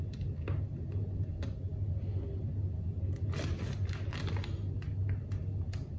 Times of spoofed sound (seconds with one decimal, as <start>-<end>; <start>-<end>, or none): none